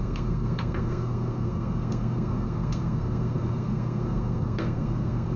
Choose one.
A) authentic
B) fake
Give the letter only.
B